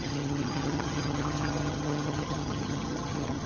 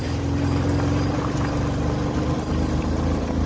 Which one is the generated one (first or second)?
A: first